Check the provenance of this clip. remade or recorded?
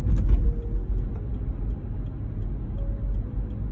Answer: recorded